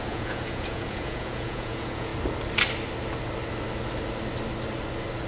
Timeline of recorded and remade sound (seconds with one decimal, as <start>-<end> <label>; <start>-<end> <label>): 0.0-2.1 remade; 2.1-5.3 recorded